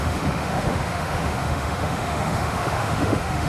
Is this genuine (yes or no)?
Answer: no